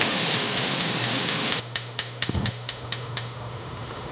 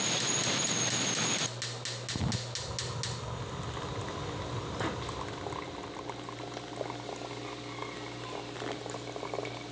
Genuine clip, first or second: second